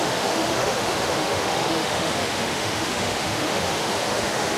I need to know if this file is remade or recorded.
remade